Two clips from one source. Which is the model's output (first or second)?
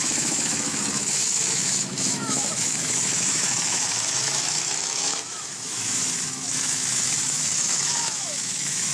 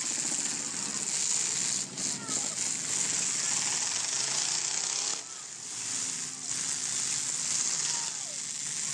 first